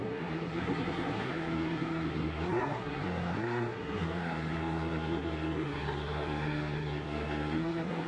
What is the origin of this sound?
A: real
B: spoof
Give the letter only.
B